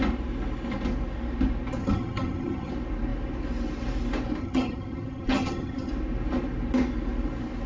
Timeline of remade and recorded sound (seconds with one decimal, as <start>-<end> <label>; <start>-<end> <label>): 0.0-1.8 recorded; 1.8-2.7 remade; 2.7-4.4 recorded; 4.4-5.9 remade; 5.9-7.7 recorded